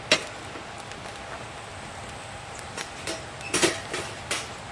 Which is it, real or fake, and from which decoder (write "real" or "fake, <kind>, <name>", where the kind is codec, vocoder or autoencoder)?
real